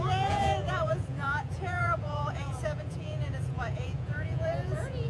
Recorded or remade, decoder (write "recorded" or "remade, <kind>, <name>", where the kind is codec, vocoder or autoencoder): remade, vocoder, Vocos